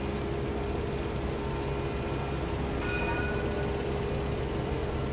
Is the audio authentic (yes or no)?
yes